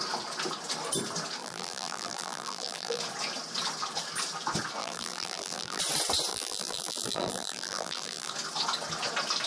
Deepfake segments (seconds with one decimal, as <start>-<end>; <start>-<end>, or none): 1.4-3.0; 4.8-5.8; 6.3-8.3